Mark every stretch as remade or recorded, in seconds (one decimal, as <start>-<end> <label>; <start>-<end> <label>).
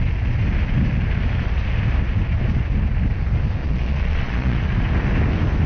0.0-3.6 recorded; 3.6-4.6 remade; 4.6-5.7 recorded